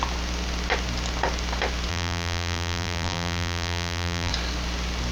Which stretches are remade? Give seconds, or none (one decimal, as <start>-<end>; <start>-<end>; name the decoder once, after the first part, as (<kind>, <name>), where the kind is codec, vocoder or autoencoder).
1.9-4.3 (vocoder, BigVGAN v2)

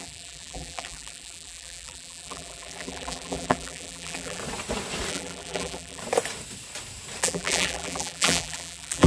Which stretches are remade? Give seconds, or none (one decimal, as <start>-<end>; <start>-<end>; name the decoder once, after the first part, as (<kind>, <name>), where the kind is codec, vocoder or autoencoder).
0.0-4.4 (vocoder, BigVGAN v2); 5.1-6.0; 7.2-9.1

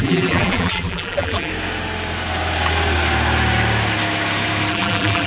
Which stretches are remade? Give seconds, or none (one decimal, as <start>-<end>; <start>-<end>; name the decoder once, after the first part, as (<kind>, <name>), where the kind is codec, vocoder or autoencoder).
0.0-1.5 (vocoder, BigVGAN v2); 4.7-5.3